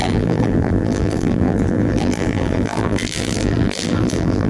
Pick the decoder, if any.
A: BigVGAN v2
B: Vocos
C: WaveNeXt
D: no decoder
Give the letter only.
A